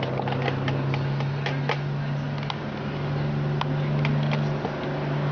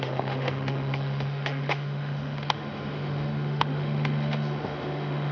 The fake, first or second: second